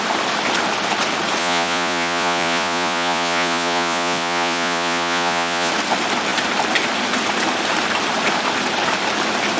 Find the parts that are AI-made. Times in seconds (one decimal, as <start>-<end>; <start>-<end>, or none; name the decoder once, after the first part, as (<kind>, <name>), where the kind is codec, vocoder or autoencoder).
1.4-5.7 (vocoder, Vocos)